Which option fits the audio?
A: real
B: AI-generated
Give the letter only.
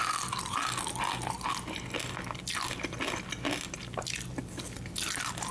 A